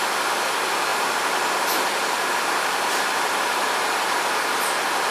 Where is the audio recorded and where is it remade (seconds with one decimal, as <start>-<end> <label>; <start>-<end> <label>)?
0.0-0.9 recorded; 0.9-3.6 remade; 3.6-5.1 recorded